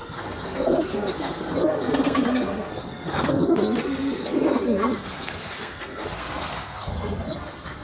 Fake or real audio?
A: fake